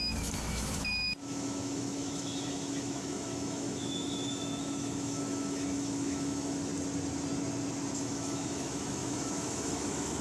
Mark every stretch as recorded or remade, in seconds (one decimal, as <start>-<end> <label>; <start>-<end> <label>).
0.0-6.7 remade; 6.7-8.0 recorded; 8.0-10.2 remade